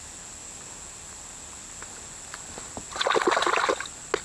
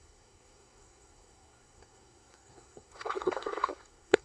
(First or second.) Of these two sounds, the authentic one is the first